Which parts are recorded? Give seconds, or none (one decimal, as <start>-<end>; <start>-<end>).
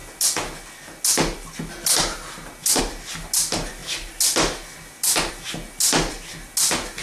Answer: 0.0-7.0